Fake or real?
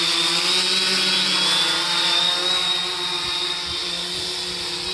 real